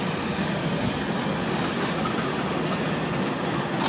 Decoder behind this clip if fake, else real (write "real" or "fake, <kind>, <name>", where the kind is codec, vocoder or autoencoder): real